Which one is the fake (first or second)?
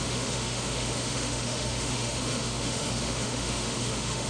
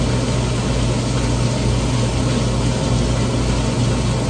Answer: first